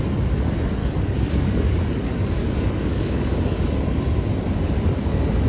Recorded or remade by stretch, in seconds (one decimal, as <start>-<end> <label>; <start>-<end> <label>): 0.0-0.8 recorded; 0.8-4.0 remade; 4.0-5.5 recorded